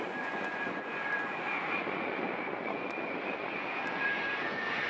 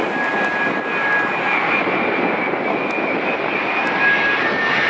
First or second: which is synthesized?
first